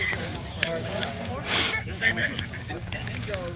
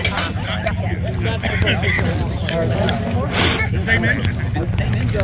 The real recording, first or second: second